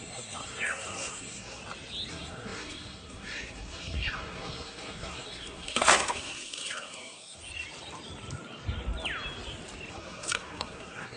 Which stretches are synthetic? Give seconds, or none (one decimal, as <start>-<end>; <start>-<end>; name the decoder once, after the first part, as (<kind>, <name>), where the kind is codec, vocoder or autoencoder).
0.0-1.6 (codec, SNAC); 2.1-7.4; 9.9-11.2